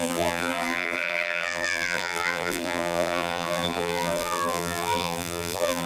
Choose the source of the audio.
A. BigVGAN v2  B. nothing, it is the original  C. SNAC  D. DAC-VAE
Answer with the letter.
A